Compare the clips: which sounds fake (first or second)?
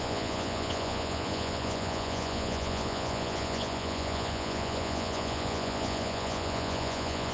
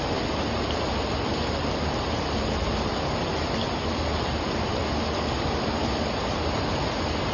first